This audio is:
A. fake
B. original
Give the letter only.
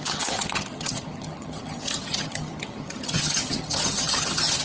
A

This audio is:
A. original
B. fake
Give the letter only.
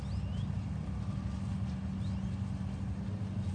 A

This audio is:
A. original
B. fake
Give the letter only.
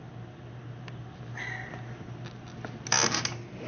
A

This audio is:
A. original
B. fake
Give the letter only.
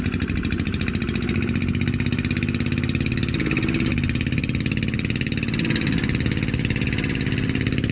A